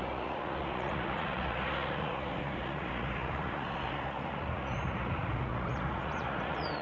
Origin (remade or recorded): remade